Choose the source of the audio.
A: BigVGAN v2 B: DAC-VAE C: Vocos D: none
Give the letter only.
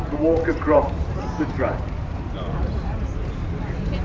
A